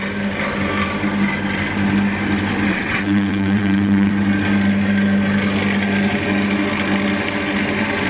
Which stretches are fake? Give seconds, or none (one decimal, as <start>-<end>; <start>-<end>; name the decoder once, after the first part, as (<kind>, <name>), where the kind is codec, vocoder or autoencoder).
2.7-4.1 (vocoder, WaveNeXt)

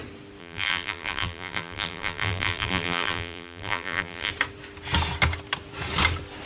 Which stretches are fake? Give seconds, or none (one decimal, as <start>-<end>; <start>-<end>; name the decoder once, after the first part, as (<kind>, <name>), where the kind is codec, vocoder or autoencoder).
0.4-4.3 (vocoder, BigVGAN v2)

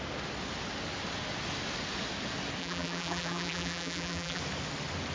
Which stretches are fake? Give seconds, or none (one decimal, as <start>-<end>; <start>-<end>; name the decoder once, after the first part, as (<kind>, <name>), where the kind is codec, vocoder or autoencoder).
2.6-4.4 (vocoder, BigVGAN v2)

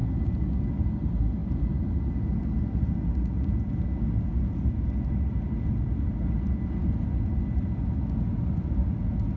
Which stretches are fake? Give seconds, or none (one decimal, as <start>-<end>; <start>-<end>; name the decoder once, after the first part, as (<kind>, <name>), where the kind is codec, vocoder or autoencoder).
none

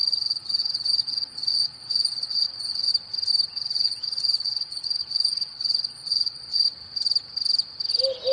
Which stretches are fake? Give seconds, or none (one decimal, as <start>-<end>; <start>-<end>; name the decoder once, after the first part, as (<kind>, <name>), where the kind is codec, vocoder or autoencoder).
0.0-2.9 (vocoder, Vocos); 3.5-6.6

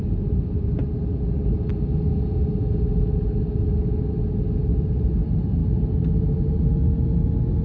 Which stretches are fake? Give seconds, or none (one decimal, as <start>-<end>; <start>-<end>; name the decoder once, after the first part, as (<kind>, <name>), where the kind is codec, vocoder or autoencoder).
0.0-1.7 (vocoder, BigVGAN v2)